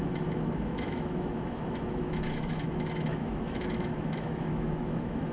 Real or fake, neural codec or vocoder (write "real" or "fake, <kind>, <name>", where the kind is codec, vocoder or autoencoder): fake, autoencoder, DAC-VAE